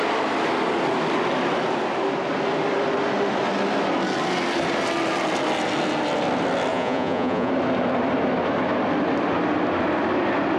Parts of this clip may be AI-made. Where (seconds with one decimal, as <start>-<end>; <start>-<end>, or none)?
6.7-7.5